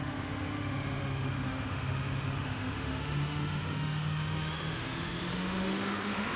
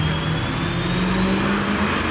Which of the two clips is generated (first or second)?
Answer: first